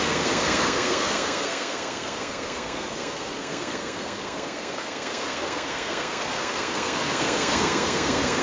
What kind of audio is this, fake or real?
fake